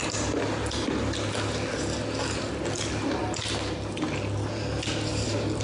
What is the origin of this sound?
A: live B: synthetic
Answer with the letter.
A